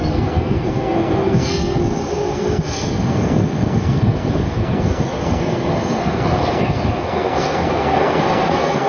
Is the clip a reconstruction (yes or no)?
yes